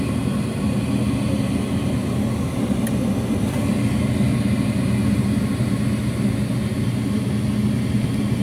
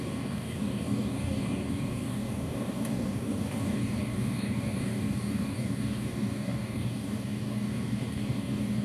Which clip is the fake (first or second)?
second